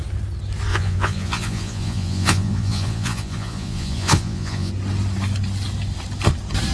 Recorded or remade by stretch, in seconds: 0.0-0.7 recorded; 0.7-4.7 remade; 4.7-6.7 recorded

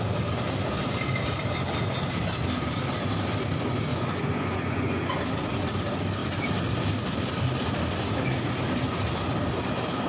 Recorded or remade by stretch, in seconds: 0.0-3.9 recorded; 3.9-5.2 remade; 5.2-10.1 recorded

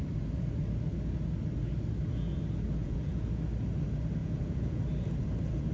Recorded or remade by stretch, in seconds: 0.0-2.8 recorded; 2.8-3.4 remade; 3.4-4.2 recorded; 4.2-4.8 remade; 4.8-5.7 recorded

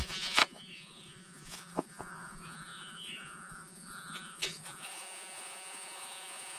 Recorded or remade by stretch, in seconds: 0.0-6.6 remade